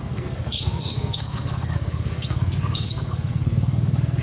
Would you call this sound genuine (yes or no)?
no